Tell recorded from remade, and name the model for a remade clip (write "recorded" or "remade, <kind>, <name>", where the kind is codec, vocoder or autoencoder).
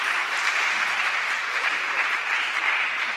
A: recorded